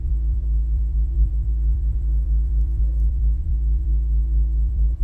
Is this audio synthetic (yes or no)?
yes